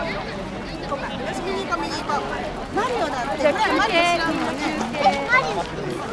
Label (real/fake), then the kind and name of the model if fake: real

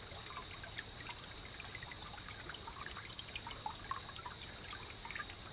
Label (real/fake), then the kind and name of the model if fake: real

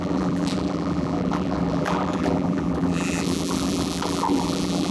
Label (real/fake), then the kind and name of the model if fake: fake, vocoder, BigVGAN v2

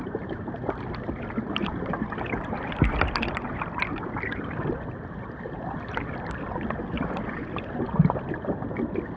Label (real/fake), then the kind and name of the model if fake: real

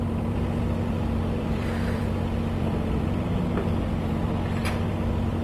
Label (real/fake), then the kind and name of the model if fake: fake, vocoder, BigVGAN v2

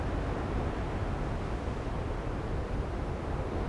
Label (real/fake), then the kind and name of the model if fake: real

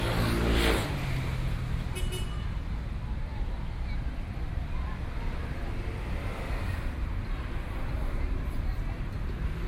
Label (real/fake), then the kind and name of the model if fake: real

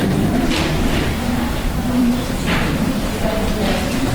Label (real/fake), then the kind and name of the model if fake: fake, vocoder, BigVGAN v2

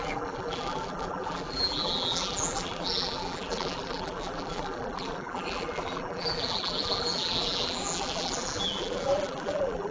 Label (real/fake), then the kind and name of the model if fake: fake, vocoder, BigVGAN v2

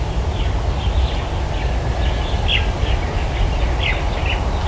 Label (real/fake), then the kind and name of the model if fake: real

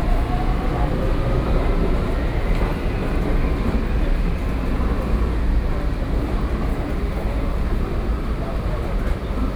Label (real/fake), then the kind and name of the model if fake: real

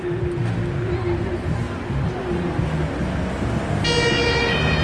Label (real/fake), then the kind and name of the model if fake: real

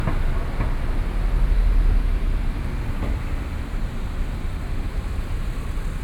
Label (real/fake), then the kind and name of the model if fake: real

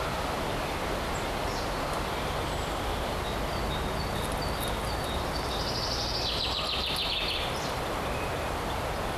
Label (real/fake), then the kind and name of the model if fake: real